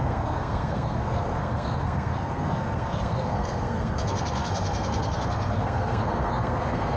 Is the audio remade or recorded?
remade